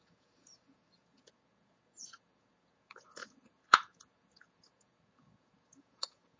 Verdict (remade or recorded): remade